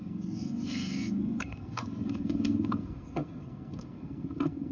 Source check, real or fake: fake